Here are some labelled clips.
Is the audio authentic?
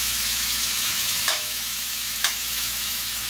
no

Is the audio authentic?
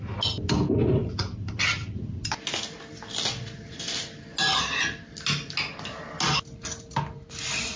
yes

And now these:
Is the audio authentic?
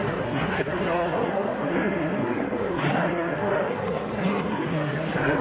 no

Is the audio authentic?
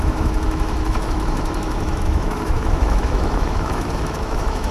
no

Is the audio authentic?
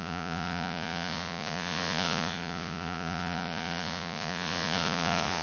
no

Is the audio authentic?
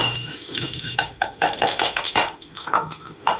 no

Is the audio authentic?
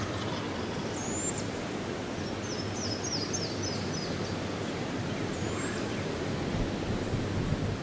yes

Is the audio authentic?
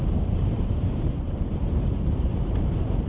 no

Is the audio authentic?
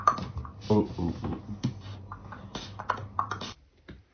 yes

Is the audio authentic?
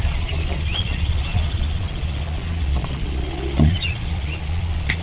no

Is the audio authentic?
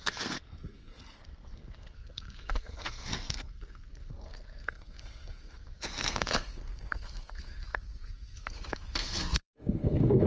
no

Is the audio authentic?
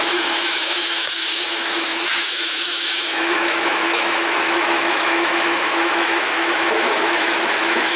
no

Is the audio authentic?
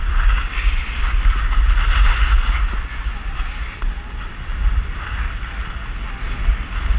yes